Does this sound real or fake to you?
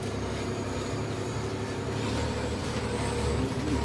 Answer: fake